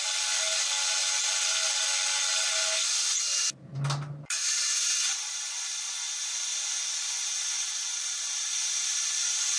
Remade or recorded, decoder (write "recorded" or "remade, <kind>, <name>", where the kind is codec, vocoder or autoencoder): recorded